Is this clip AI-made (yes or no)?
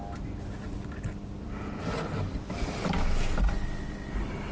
no